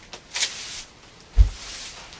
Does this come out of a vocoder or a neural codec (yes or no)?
no